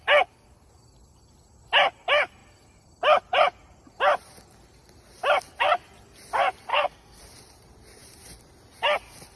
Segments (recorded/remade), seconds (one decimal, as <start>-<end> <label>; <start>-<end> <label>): 0.0-6.7 recorded; 6.7-7.2 remade; 7.2-9.4 recorded